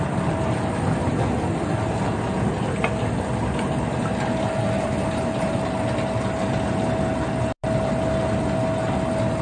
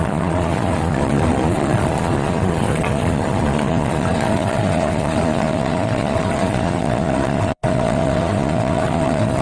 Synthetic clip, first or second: second